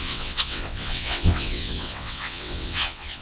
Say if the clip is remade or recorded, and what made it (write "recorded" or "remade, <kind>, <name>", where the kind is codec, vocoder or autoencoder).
remade, vocoder, WaveNeXt